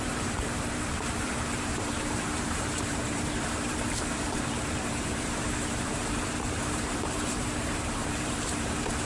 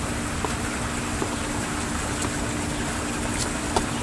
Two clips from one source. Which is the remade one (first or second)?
first